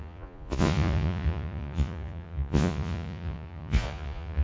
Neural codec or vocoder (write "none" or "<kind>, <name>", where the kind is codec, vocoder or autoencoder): vocoder, Vocos